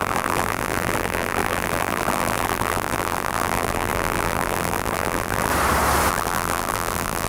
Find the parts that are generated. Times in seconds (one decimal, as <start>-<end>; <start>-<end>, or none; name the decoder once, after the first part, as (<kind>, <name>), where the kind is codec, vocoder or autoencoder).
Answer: 0.0-5.5 (vocoder, BigVGAN v2); 6.1-7.3